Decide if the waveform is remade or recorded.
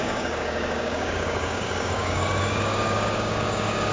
remade